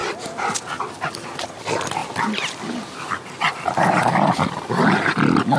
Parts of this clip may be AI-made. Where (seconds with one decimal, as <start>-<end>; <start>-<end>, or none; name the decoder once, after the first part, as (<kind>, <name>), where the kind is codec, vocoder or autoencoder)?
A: none